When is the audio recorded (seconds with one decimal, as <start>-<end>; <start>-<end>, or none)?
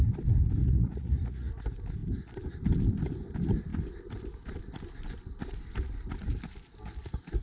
0.0-0.6; 1.5-7.4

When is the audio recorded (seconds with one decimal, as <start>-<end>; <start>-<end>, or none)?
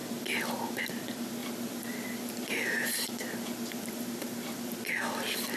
0.0-1.4; 4.8-5.6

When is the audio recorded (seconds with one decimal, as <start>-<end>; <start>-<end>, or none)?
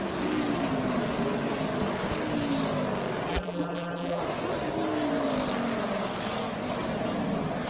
0.0-3.3; 4.2-7.7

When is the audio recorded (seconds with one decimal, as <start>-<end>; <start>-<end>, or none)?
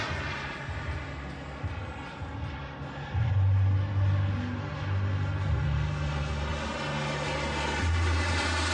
0.0-8.7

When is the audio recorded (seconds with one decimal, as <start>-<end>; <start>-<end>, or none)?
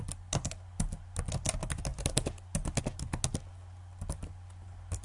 0.0-5.0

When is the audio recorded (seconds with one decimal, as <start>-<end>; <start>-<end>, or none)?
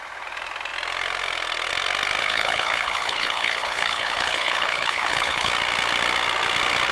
0.0-2.2; 5.5-6.9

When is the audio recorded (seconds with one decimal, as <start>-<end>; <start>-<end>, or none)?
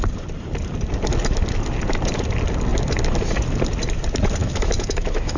0.0-4.4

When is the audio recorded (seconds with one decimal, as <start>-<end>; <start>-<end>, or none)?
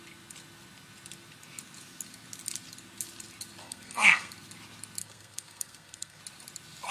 0.0-3.6; 4.3-5.0; 6.2-6.9